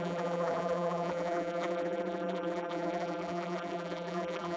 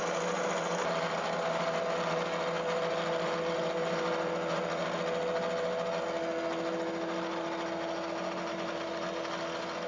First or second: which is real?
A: second